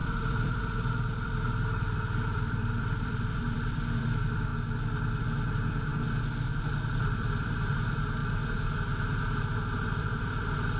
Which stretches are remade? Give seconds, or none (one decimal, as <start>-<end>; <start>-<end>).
0.0-4.5; 5.2-5.9; 6.6-8.2; 10.0-10.8

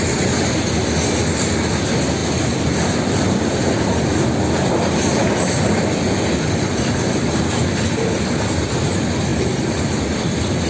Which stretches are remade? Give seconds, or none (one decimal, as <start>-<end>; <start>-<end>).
2.2-7.4; 9.3-10.7

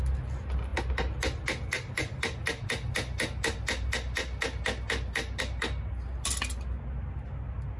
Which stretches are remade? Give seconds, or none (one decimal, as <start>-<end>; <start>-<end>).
none

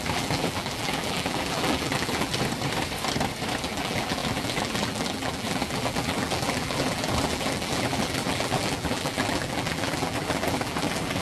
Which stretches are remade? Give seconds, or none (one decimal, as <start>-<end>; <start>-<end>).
0.0-2.3; 3.6-11.2